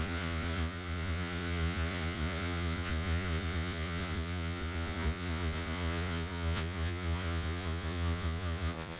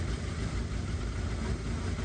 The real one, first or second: second